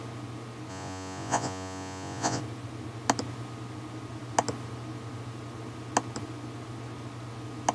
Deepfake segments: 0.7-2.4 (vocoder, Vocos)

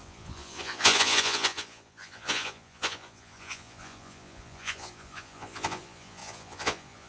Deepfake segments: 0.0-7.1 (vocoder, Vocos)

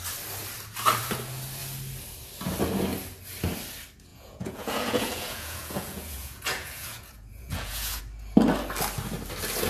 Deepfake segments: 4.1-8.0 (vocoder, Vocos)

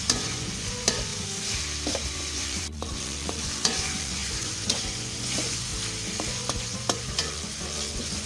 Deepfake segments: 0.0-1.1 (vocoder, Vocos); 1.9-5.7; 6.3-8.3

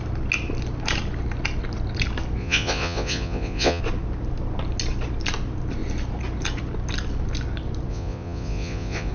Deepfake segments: 2.4-3.8 (vocoder, Vocos); 7.9-9.1

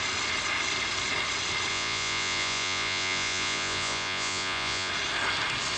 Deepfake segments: 1.7-4.9 (vocoder, Vocos)

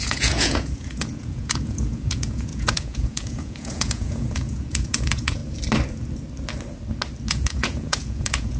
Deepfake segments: 0.0-5.4 (vocoder, Vocos); 7.3-8.6

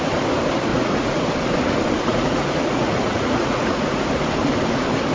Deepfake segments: 0.7-1.3 (vocoder, Vocos); 2.1-4.1